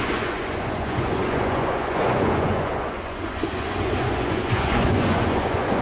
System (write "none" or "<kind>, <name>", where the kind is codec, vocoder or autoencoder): vocoder, Vocos